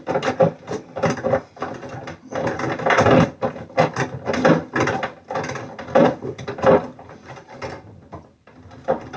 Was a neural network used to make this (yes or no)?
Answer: no